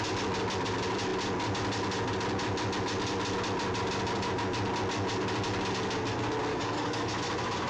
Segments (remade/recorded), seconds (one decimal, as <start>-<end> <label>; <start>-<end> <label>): 0.0-6.5 recorded; 6.5-7.1 remade; 7.1-7.7 recorded